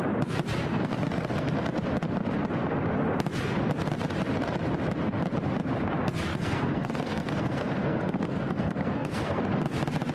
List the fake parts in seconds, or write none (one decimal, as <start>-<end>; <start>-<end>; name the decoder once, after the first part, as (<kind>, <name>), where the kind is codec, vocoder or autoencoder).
0.7-1.5 (codec, SNAC); 6.3-9.4